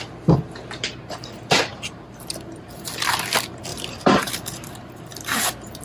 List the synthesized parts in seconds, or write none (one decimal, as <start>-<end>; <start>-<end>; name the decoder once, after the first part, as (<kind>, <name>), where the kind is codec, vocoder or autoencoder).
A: 1.7-2.9 (vocoder, BigVGAN v2); 3.7-4.3

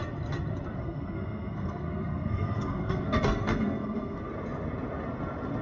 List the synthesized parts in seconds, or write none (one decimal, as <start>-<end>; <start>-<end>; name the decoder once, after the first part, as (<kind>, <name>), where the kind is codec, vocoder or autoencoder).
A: 0.8-4.2 (codec, SNAC)